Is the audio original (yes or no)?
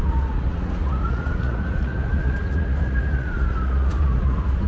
no